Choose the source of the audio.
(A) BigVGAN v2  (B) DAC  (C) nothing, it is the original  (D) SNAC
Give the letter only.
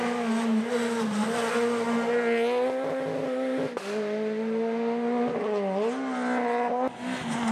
C